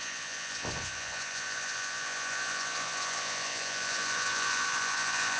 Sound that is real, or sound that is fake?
fake